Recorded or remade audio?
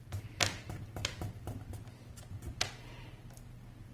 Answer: remade